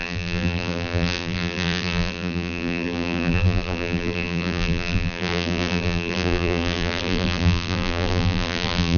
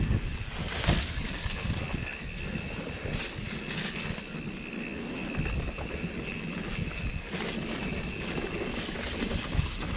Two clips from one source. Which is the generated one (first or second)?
first